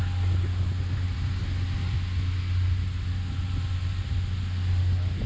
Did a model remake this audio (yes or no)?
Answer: no